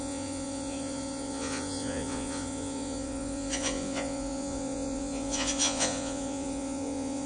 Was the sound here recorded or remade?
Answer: remade